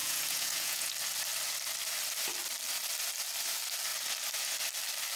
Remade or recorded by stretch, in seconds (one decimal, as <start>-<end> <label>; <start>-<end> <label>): 0.0-0.9 remade; 0.9-5.2 recorded